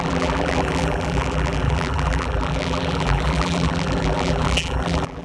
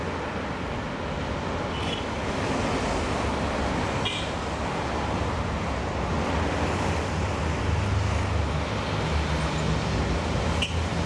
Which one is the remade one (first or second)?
first